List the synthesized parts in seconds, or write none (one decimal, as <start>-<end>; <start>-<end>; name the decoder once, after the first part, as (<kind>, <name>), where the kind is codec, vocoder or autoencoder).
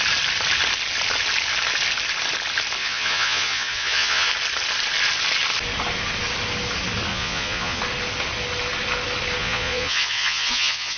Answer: 2.8-4.3 (vocoder, Vocos); 7.1-7.8; 9.4-11.0